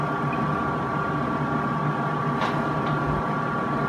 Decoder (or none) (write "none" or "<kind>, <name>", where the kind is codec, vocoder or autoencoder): none